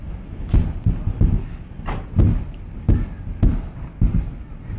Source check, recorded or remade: recorded